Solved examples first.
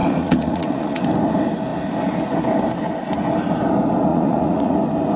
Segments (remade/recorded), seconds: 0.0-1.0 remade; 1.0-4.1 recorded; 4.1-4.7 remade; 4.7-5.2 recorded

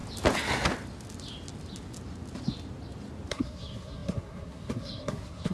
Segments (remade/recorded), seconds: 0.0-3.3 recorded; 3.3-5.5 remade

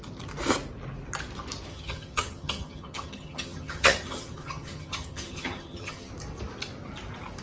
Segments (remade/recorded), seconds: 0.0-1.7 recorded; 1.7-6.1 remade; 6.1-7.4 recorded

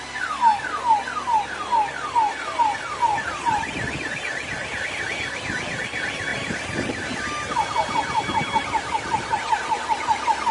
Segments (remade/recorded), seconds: 0.0-10.5 recorded

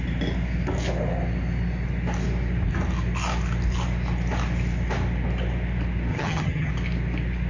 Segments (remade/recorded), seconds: 0.0-6.1 recorded; 6.1-6.7 remade; 6.7-7.5 recorded